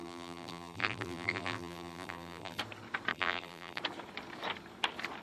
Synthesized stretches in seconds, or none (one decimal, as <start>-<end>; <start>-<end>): 0.0-2.6; 3.1-3.8